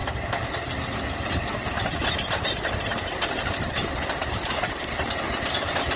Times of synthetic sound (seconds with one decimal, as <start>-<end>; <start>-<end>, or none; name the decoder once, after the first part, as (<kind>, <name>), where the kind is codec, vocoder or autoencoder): none